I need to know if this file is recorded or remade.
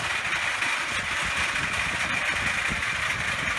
recorded